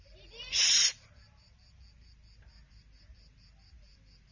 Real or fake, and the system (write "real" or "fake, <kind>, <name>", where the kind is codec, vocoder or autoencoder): real